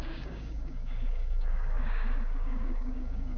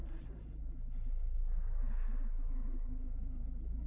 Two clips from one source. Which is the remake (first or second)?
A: first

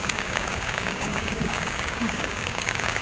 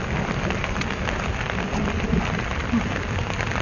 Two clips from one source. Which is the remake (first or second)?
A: first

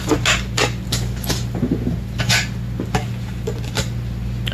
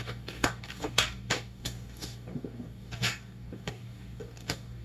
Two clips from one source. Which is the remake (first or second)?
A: second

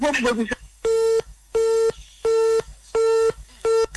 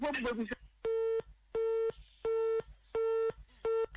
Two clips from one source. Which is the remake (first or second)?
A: first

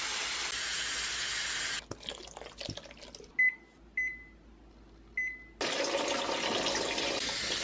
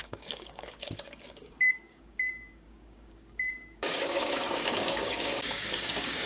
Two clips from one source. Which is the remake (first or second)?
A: second